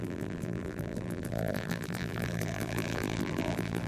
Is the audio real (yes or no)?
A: no